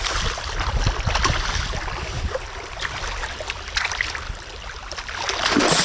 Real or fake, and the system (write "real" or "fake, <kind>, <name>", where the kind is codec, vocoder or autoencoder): real